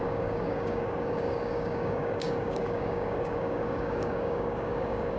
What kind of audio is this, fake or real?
fake